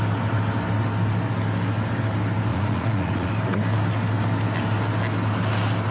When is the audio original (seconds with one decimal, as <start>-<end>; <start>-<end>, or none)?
0.0-2.5; 3.3-5.9

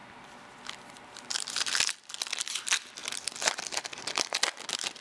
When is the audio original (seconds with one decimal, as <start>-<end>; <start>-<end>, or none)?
0.0-5.0

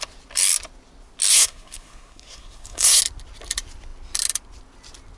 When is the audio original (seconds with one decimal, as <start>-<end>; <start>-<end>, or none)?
0.0-1.3; 3.0-5.2